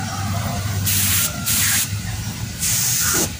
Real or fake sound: fake